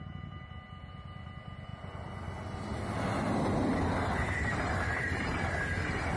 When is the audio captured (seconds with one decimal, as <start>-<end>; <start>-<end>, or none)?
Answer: 0.0-6.2